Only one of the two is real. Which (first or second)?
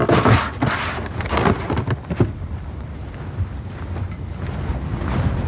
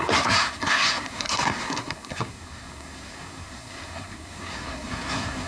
first